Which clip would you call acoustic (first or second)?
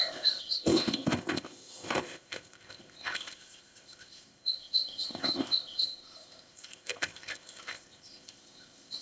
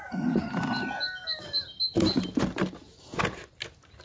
second